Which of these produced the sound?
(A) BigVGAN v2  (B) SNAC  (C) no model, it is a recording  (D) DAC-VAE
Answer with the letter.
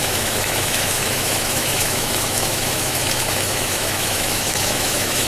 D